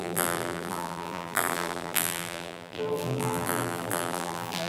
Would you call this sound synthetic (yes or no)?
yes